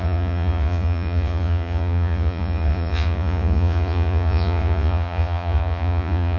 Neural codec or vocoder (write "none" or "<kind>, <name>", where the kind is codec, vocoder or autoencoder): vocoder, Vocos